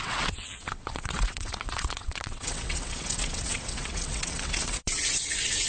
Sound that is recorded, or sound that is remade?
remade